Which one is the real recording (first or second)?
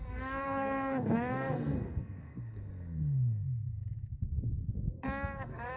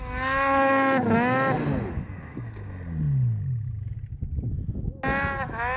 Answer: second